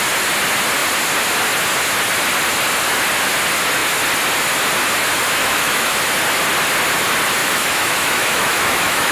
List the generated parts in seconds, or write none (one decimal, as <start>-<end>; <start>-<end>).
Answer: 5.4-6.0; 7.4-9.1